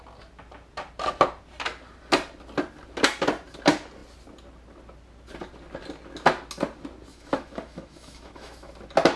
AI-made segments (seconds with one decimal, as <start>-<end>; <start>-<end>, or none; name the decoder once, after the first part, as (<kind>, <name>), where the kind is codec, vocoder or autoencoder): 7.1-8.7 (autoencoder, DAC-VAE)